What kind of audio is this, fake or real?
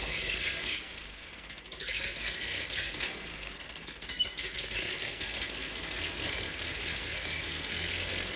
fake